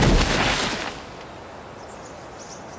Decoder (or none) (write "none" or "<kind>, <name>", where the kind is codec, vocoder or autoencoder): none